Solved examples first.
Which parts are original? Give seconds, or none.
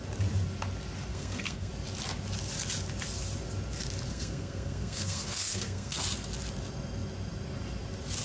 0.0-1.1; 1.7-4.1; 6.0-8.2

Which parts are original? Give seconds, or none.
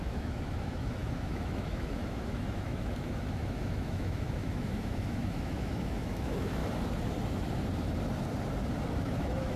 6.6-9.0